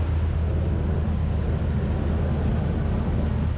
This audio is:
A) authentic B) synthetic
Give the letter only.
A